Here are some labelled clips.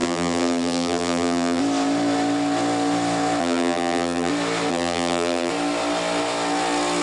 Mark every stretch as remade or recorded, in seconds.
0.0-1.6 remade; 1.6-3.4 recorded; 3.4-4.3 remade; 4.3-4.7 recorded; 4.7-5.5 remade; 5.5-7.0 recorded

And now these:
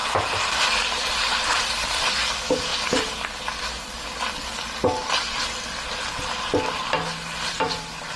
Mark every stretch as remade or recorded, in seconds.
0.0-0.5 recorded; 0.5-2.7 remade; 2.7-7.5 recorded; 7.5-8.2 remade

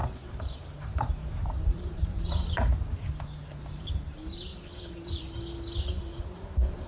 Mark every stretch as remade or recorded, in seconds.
0.0-3.1 remade; 3.1-4.5 recorded; 4.5-5.2 remade; 5.2-6.1 recorded; 6.1-6.9 remade

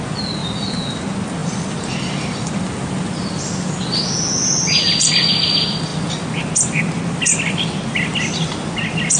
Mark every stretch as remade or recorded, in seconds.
0.0-0.4 recorded; 0.4-1.0 remade; 1.0-1.4 recorded; 1.4-4.0 remade; 4.0-9.2 recorded

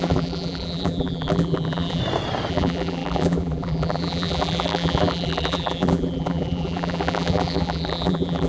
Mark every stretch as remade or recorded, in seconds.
0.0-2.0 remade; 2.0-2.5 recorded; 2.5-8.5 remade

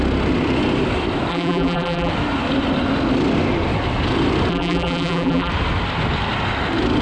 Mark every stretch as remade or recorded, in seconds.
0.0-1.3 recorded; 1.3-2.1 remade; 2.1-4.5 recorded; 4.5-5.5 remade; 5.5-7.0 recorded

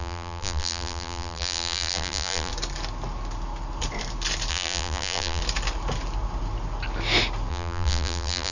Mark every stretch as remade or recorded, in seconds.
0.0-2.5 remade; 2.5-4.5 recorded; 4.5-5.4 remade; 5.4-7.5 recorded; 7.5-8.5 remade

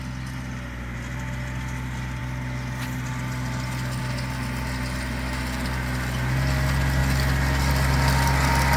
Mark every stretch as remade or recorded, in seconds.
0.0-8.8 recorded